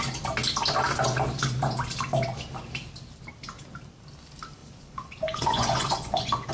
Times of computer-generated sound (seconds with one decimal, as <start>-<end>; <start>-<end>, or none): 4.6-6.5